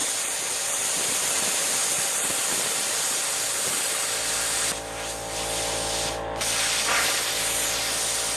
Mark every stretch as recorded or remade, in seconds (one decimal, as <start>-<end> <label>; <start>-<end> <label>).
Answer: 0.0-8.4 recorded